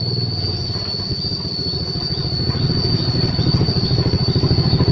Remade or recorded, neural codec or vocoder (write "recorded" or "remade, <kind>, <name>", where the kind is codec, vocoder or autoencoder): recorded